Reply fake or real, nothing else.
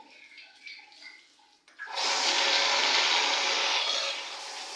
real